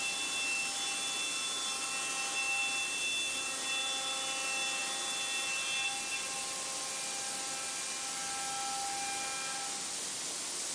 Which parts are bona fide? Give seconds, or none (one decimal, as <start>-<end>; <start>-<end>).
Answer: 0.0-10.7